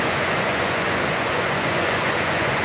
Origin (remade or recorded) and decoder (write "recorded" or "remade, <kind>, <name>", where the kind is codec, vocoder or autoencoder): remade, vocoder, Vocos